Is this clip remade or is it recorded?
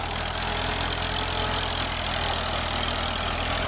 recorded